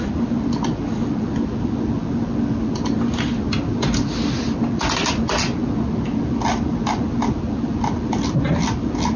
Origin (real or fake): real